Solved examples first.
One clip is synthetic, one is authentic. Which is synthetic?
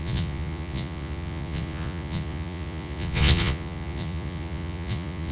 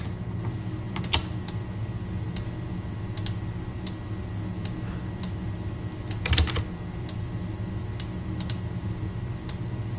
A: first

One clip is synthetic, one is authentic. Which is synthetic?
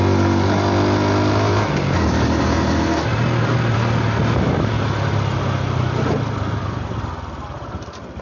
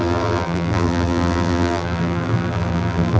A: second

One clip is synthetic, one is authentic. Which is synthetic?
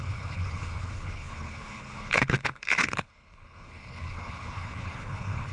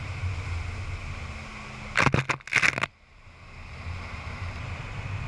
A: first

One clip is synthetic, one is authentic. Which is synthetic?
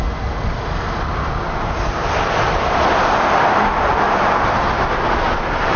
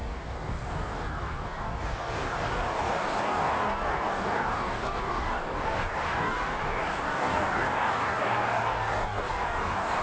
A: second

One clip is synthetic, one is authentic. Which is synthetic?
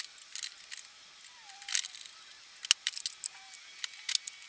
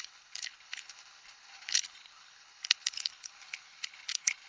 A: second